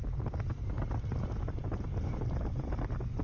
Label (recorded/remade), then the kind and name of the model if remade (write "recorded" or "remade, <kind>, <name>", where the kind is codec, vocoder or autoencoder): recorded